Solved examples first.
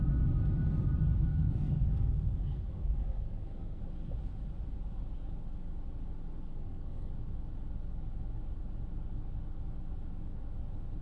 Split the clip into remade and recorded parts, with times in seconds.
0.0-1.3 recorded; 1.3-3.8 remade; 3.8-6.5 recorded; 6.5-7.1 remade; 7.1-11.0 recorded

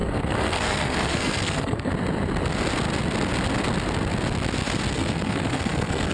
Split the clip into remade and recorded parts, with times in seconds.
0.0-1.9 remade; 1.9-4.9 recorded; 4.9-6.1 remade

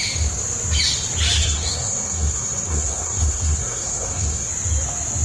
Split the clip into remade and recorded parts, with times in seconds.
0.0-1.4 recorded; 1.4-4.5 remade; 4.5-5.2 recorded

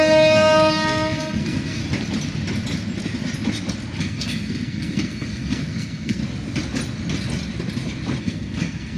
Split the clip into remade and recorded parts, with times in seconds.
0.0-1.8 remade; 1.8-4.0 recorded; 4.0-6.2 remade; 6.2-8.2 recorded; 8.2-9.0 remade

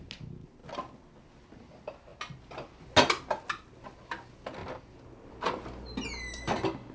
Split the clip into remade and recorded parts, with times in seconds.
0.0-6.9 recorded

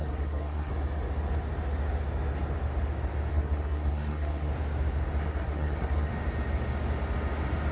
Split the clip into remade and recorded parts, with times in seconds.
0.0-0.7 remade; 0.7-3.3 recorded; 3.3-4.5 remade; 4.5-5.2 recorded; 5.2-6.1 remade; 6.1-7.7 recorded

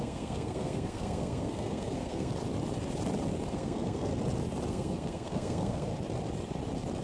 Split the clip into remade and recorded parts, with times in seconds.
0.0-2.3 remade; 2.3-3.5 recorded; 3.5-4.1 remade; 4.1-4.7 recorded; 4.7-5.9 remade; 5.9-7.0 recorded

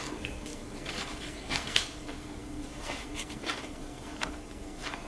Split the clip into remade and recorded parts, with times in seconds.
0.0-5.1 remade